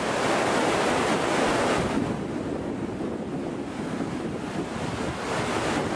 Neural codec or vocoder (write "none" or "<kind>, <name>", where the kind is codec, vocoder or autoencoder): none